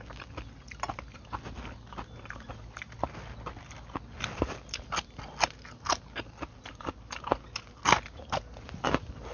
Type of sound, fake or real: real